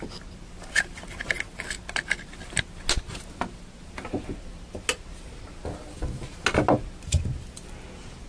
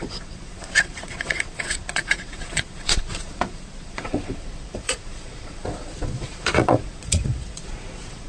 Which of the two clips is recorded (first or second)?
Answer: first